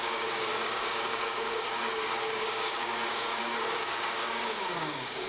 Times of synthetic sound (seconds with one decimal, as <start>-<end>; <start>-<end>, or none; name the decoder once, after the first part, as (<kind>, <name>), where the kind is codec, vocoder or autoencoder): 0.0-5.3 (codec, DAC)